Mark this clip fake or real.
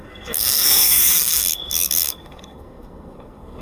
fake